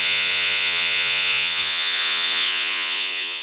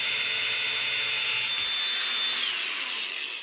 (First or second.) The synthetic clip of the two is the first